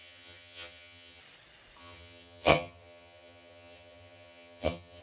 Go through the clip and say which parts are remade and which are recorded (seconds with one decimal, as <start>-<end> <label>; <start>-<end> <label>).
0.0-1.2 remade; 1.2-1.8 recorded; 1.8-5.0 remade